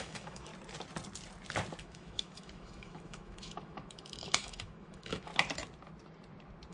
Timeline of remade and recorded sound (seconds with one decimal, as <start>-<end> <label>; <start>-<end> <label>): 0.0-0.5 remade; 0.5-1.8 recorded; 1.8-5.3 remade; 5.3-6.7 recorded